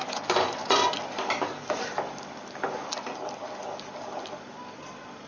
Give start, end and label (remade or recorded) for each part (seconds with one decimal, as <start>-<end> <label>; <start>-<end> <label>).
0.0-0.9 remade; 0.9-5.3 recorded